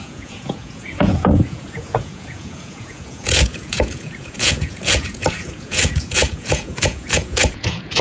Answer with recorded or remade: remade